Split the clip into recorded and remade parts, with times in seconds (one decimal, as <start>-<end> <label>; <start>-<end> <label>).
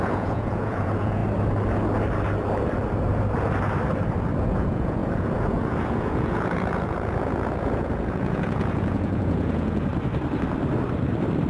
0.0-1.2 remade; 1.2-4.4 recorded; 4.4-9.9 remade; 9.9-11.5 recorded